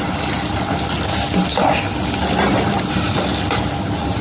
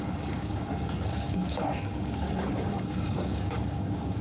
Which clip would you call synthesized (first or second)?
second